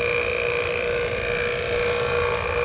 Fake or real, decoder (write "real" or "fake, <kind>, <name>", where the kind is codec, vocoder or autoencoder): real